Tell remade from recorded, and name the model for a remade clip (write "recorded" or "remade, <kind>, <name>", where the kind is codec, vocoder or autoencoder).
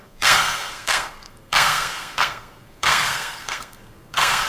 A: remade, codec, SNAC